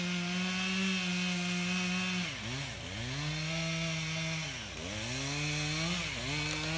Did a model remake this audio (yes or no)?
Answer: no